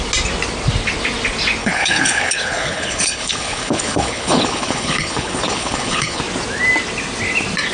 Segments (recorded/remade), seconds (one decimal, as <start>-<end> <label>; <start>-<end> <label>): 0.0-1.6 recorded; 1.6-6.2 remade; 6.2-7.7 recorded